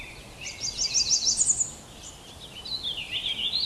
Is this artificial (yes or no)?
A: no